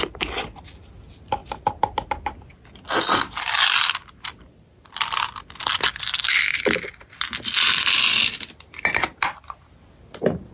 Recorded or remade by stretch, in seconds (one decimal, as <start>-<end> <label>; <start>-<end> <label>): 0.0-10.5 recorded